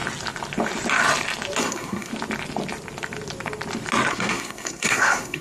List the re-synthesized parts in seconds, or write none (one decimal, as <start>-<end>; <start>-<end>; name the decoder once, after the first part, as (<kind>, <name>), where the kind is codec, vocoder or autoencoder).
1.6-2.1 (codec, SNAC); 4.1-5.4